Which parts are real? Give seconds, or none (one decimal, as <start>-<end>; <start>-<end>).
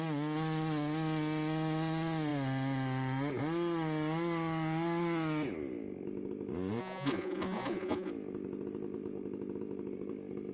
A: 0.0-6.8; 8.1-10.5